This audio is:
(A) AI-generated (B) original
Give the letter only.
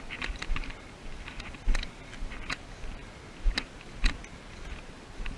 B